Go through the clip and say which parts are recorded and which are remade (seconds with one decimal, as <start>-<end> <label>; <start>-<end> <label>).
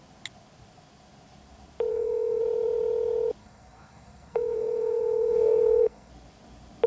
0.0-1.9 recorded; 1.9-2.4 remade; 2.4-3.4 recorded; 3.4-6.1 remade; 6.1-6.9 recorded